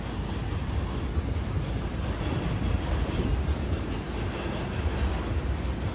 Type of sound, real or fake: real